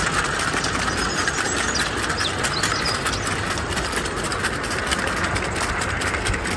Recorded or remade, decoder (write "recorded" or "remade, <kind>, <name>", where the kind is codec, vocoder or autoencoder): recorded